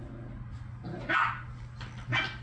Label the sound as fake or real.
real